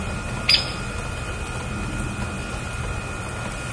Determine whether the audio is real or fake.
real